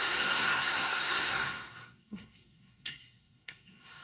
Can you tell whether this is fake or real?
fake